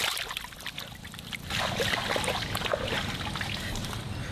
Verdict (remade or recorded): recorded